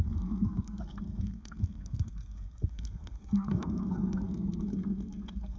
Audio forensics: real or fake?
fake